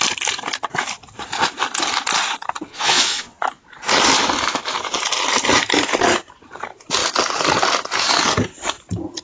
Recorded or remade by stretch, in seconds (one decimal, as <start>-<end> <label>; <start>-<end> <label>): 0.0-2.7 recorded; 2.7-3.4 remade; 3.4-9.2 recorded